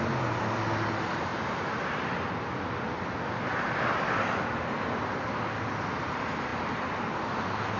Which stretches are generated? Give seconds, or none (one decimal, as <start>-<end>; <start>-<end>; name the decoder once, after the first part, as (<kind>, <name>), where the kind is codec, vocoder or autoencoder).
none